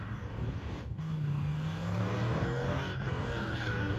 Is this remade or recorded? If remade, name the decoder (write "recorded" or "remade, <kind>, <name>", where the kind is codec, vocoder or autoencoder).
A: remade, codec, DAC